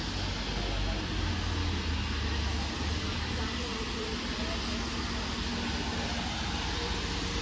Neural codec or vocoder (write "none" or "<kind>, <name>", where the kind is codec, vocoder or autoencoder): none